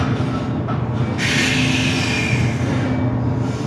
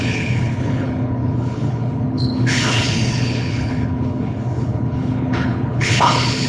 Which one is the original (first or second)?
first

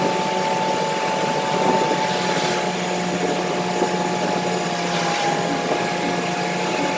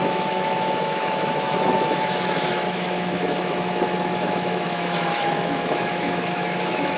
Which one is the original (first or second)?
first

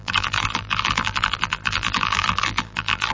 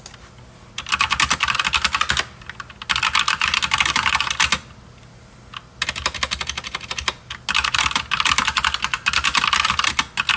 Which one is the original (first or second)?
second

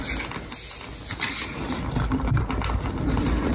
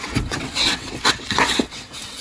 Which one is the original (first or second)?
first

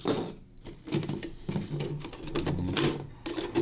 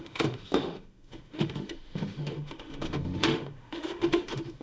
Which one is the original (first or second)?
first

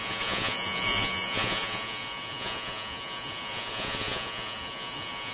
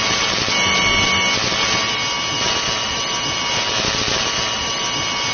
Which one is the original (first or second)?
second